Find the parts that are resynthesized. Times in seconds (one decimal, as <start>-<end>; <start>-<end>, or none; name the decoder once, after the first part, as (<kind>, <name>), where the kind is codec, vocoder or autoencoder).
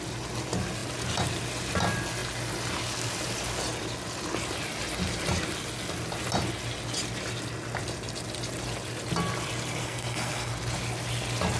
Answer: 9.8-10.5 (codec, SNAC)